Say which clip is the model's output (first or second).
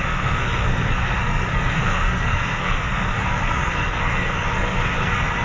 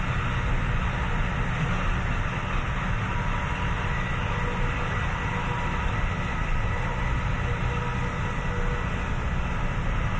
first